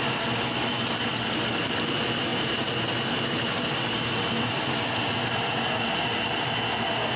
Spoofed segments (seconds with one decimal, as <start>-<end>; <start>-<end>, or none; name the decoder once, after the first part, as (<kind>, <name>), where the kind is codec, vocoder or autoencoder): none